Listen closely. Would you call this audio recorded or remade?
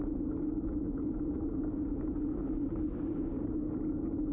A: recorded